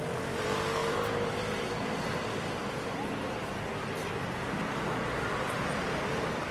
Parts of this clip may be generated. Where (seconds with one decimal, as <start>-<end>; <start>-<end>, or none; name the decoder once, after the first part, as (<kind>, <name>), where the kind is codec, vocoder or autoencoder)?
0.8-3.5 (vocoder, BigVGAN v2)